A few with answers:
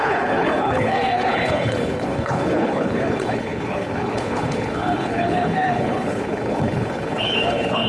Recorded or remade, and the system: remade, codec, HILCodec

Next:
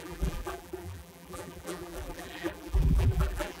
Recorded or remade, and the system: remade, vocoder, BigVGAN v2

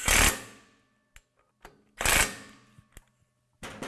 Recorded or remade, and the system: recorded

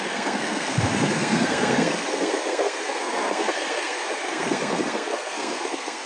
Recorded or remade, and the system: remade, codec, SNAC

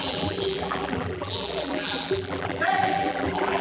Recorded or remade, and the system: remade, vocoder, BigVGAN v2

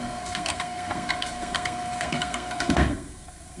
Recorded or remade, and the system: remade, codec, SNAC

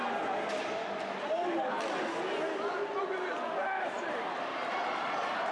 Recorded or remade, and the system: recorded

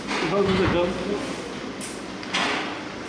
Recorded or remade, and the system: recorded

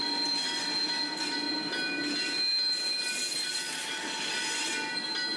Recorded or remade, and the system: recorded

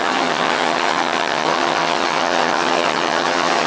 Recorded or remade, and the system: remade, vocoder, HiFi-GAN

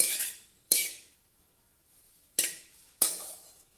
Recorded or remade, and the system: remade, autoencoder, DAC-VAE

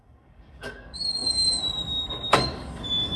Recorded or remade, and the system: remade, codec, DAC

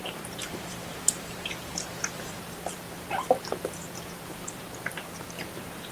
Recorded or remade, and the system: remade, vocoder, BigVGAN v2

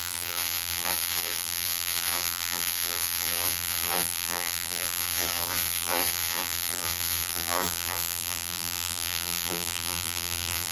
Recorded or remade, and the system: remade, vocoder, BigVGAN v2